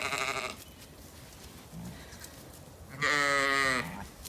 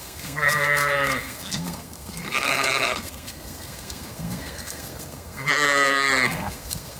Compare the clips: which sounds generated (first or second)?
second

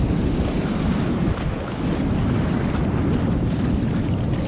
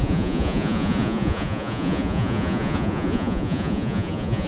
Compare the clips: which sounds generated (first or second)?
second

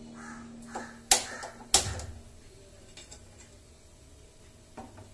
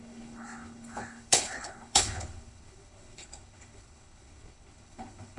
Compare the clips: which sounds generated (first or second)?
second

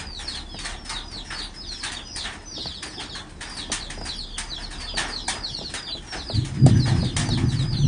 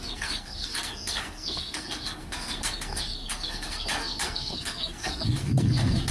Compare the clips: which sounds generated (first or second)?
second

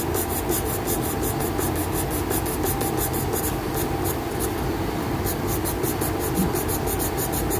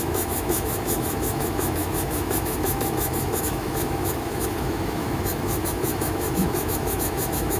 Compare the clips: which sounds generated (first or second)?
second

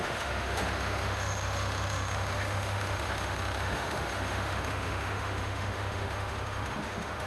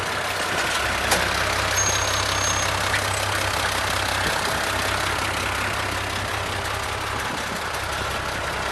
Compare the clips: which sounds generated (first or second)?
first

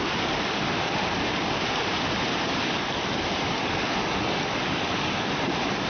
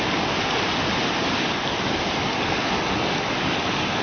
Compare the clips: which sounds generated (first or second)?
first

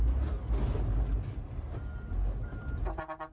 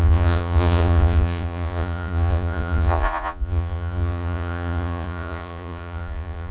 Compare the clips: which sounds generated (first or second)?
second